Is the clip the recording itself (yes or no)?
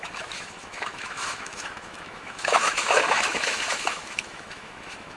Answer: no